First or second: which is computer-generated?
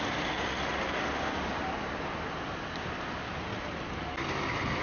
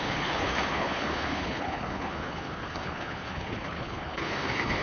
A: second